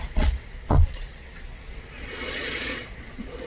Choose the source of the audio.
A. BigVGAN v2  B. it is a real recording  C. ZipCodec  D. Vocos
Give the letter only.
D